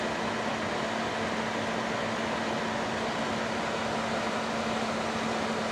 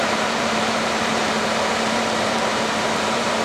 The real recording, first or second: first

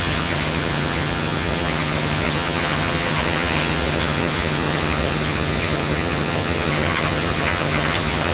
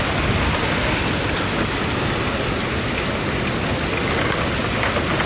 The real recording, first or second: second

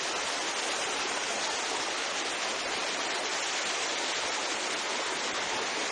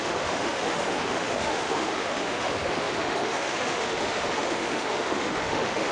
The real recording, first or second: first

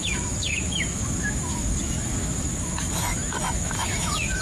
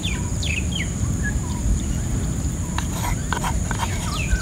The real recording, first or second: second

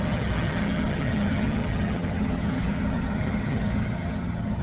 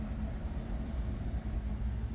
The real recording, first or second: second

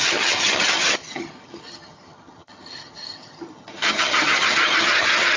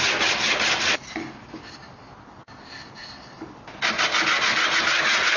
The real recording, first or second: second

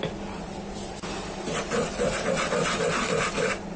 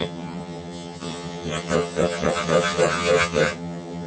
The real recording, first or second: first